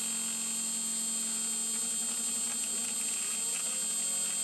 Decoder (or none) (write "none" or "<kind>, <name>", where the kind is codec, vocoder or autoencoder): none